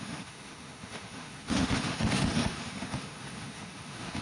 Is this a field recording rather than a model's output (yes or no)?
no